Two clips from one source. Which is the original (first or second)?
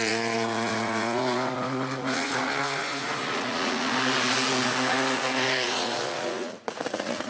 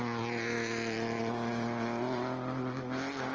second